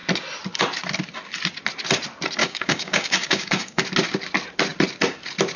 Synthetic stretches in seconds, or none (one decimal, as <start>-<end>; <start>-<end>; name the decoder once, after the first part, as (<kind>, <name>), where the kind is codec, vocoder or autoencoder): 2.4-3.8 (codec, DAC)